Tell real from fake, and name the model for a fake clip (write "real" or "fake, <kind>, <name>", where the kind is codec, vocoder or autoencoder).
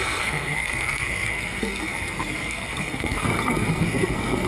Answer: fake, codec, SNAC